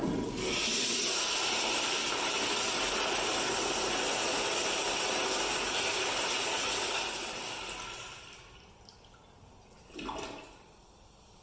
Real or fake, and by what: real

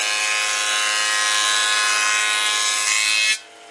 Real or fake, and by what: real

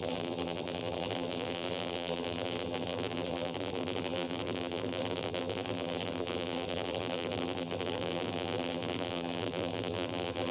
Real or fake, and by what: fake, vocoder, BigVGAN v2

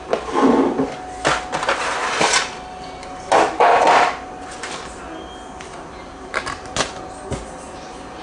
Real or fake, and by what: real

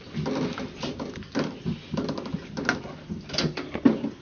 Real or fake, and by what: real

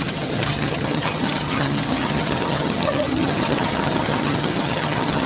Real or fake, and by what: fake, vocoder, HiFi-GAN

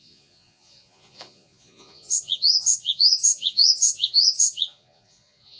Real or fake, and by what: fake, vocoder, Vocos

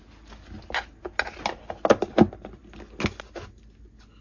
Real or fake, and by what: real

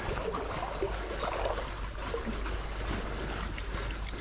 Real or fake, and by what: real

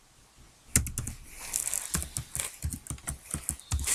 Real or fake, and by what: real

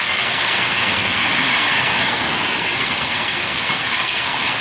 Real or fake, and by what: fake, codec, SNAC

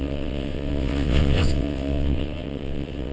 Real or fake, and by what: fake, vocoder, WaveNeXt